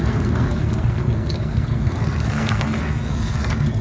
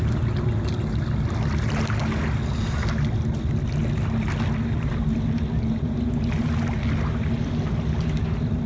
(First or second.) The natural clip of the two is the second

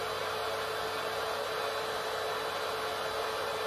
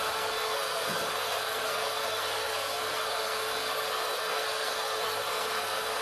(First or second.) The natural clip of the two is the first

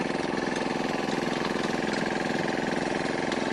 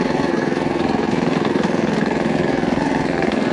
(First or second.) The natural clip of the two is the first